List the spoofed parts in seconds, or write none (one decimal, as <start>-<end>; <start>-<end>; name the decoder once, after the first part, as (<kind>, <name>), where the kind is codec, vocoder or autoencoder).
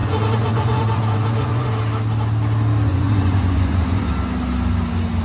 0.0-1.7 (vocoder, Vocos); 2.9-4.1